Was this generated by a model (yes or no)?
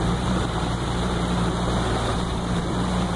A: no